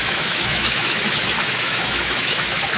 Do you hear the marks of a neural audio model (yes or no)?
yes